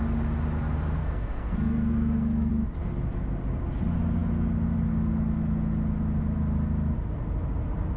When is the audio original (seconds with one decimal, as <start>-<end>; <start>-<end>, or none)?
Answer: 0.0-1.0; 2.5-8.0